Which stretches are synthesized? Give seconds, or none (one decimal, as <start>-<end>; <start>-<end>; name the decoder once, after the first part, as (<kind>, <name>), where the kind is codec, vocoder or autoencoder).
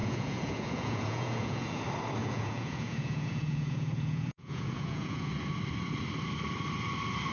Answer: 0.0-1.8 (vocoder, Vocos); 2.2-5.3